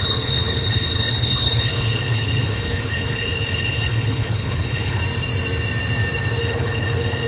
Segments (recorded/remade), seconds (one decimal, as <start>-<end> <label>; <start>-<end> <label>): 0.0-5.0 remade; 5.0-6.4 recorded; 6.4-7.3 remade